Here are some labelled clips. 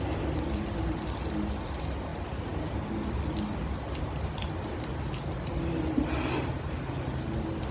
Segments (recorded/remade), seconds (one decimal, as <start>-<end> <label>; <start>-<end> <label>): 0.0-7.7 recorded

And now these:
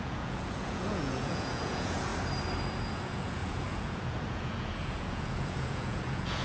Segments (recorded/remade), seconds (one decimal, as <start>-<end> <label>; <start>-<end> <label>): 0.0-2.1 remade; 2.1-2.6 recorded; 2.6-6.4 remade

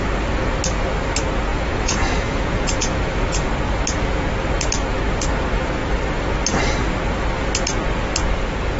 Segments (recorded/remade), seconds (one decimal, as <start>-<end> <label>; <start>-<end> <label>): 0.0-1.5 recorded; 1.5-3.5 remade; 3.5-8.8 recorded

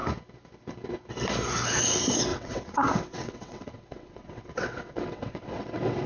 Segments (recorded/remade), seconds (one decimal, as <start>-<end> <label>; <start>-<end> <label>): 0.0-2.3 recorded; 2.3-6.1 remade

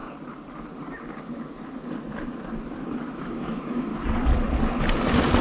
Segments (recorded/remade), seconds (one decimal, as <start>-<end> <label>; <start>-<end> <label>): 0.0-3.2 recorded; 3.2-3.9 remade; 3.9-5.4 recorded

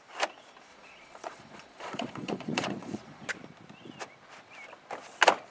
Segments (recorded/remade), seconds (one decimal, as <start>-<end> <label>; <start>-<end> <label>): 0.0-0.7 recorded; 0.7-3.3 remade; 3.3-5.5 recorded

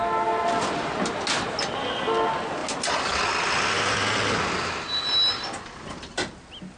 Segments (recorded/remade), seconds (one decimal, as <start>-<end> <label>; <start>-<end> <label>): 0.0-6.8 recorded

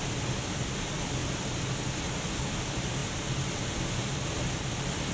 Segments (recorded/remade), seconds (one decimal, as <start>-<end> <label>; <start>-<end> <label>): 0.0-5.1 recorded